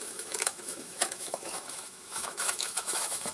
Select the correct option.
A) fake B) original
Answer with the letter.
A